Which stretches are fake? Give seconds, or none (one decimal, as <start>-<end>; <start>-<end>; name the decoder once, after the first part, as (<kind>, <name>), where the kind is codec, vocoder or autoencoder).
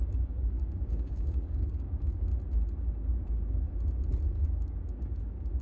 0.0-2.3 (codec, DAC); 4.2-5.6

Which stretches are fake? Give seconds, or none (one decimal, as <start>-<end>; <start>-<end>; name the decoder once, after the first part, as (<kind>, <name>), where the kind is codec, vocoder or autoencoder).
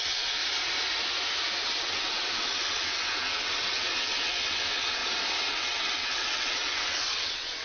0.0-0.4 (vocoder, WaveNeXt); 1.8-5.0; 5.5-7.6